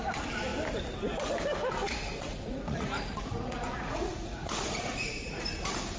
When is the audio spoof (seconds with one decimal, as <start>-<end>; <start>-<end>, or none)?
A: 1.8-5.4